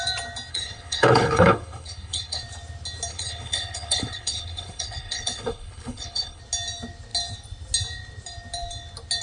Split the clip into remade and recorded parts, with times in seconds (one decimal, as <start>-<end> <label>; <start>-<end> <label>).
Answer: 0.0-0.5 recorded; 0.5-2.4 remade; 2.4-3.1 recorded; 3.1-6.4 remade; 6.4-9.2 recorded

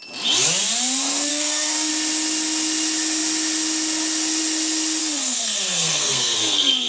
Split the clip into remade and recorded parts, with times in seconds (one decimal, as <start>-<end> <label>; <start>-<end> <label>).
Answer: 0.0-1.3 recorded; 1.3-1.9 remade; 1.9-5.0 recorded; 5.0-6.9 remade

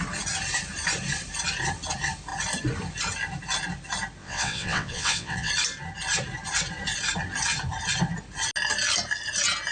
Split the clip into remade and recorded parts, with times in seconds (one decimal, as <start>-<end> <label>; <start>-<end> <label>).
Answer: 0.0-4.2 recorded; 4.2-5.5 remade; 5.5-9.7 recorded

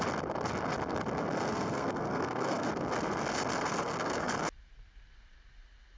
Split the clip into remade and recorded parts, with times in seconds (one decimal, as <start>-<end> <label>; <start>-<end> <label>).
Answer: 0.0-1.5 recorded; 1.5-2.7 remade; 2.7-3.7 recorded; 3.7-4.3 remade; 4.3-6.0 recorded

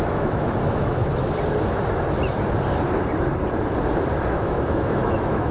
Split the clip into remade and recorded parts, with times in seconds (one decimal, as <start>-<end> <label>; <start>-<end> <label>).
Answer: 0.0-1.0 remade; 1.0-4.3 recorded; 4.3-5.5 remade

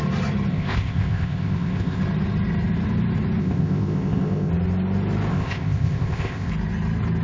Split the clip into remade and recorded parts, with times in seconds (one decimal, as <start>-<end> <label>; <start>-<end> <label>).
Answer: 0.0-0.5 recorded; 0.5-2.0 remade; 2.0-3.4 recorded; 3.4-4.5 remade; 4.5-5.3 recorded; 5.3-6.5 remade; 6.5-7.2 recorded

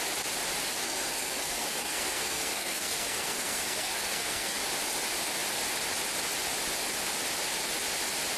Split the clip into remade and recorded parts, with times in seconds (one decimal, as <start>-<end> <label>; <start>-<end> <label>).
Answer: 0.0-0.8 recorded; 0.8-4.6 remade; 4.6-8.4 recorded